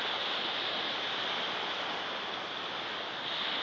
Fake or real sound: real